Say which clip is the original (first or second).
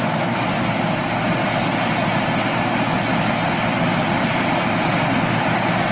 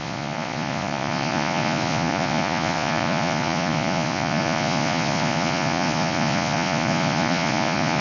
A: first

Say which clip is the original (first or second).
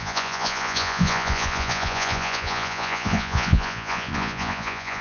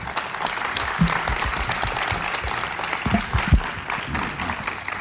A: second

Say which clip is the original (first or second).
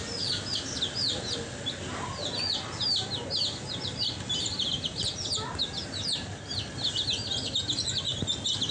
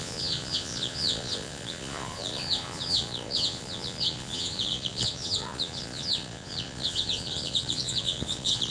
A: first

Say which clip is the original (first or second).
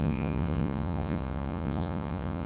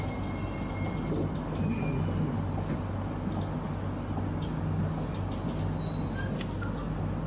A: second